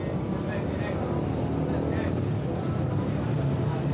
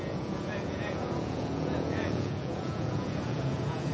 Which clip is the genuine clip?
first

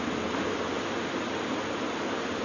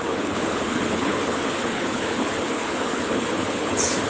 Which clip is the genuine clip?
first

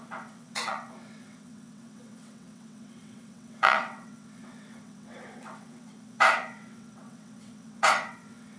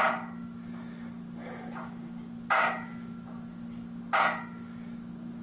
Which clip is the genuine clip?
second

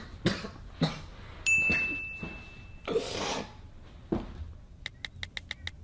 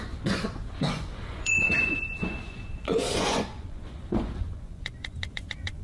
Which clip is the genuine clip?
first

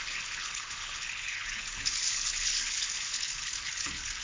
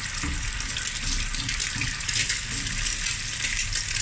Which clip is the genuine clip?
second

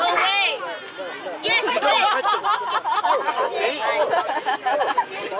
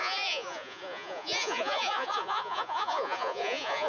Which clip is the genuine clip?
first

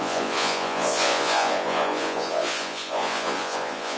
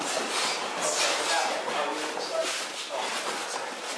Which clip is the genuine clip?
second